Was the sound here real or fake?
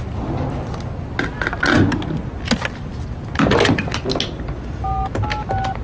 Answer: real